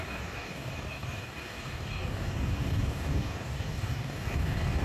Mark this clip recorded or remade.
remade